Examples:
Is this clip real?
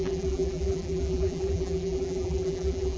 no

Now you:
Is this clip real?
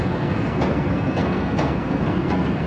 no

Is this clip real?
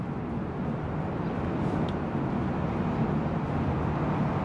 yes